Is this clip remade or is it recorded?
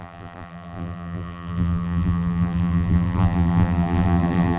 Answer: remade